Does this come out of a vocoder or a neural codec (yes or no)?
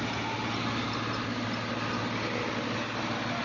no